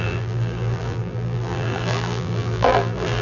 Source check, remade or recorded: remade